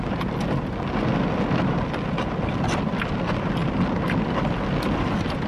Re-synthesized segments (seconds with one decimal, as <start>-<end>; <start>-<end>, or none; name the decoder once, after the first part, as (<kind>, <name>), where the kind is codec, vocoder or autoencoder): none

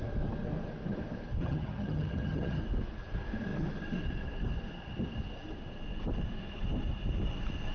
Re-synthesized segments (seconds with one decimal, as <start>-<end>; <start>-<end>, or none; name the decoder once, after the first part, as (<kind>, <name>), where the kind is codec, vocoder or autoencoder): 1.4-2.6 (vocoder, HiFi-GAN)